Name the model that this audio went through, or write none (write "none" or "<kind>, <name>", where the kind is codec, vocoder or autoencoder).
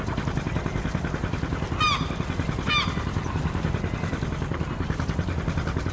none